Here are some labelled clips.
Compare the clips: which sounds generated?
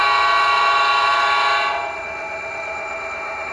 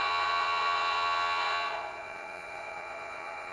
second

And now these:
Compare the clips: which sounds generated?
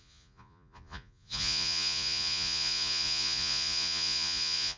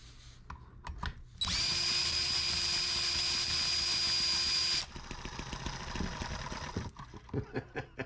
first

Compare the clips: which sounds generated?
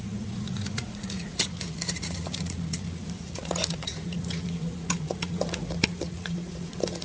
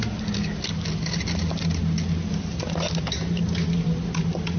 first